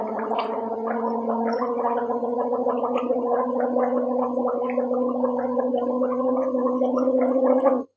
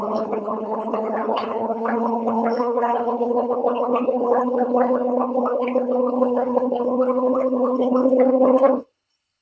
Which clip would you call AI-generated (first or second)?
second